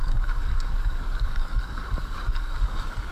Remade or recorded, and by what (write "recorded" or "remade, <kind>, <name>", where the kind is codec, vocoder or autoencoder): remade, codec, DAC